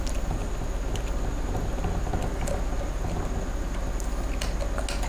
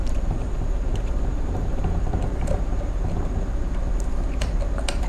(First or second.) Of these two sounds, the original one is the first